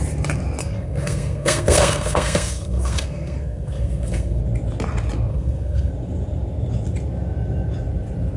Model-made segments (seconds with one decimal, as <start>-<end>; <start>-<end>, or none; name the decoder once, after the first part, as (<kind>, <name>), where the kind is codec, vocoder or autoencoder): 0.6-4.4 (codec, SNAC); 5.3-5.9